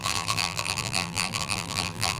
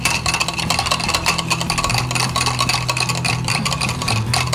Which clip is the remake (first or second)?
first